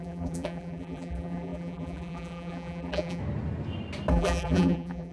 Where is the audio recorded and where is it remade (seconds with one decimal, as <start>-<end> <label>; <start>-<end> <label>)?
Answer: 0.0-3.2 remade; 3.2-4.1 recorded; 4.1-5.1 remade